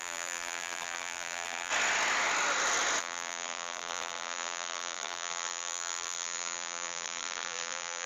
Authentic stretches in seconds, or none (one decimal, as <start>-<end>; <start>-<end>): 1.7-3.0